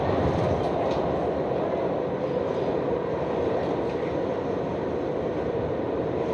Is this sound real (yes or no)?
yes